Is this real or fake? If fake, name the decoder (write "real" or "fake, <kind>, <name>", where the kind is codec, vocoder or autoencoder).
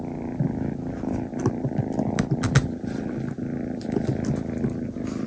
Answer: real